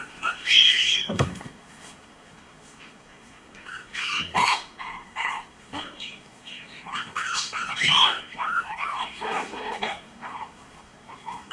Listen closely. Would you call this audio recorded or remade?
remade